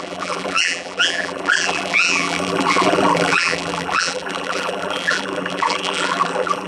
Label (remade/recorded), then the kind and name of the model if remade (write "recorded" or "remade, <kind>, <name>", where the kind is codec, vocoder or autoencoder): remade, vocoder, BigVGAN v2